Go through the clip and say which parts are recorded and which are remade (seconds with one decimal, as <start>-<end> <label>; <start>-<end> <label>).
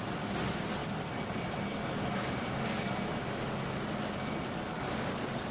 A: 0.0-5.5 recorded